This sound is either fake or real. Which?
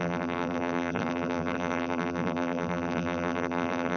fake